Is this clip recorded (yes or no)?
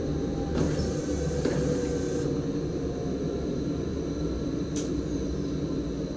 yes